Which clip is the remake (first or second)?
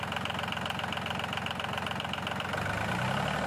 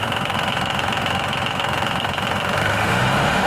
second